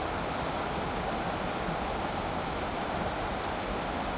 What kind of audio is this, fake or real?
real